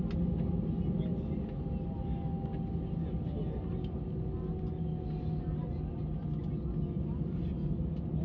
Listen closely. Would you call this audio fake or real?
real